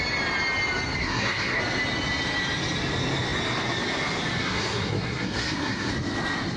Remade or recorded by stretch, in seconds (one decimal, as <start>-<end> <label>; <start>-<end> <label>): 0.0-1.0 recorded; 1.0-1.6 remade; 1.6-4.4 recorded; 4.4-5.9 remade; 5.9-6.6 recorded